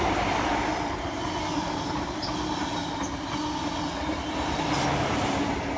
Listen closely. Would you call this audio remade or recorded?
recorded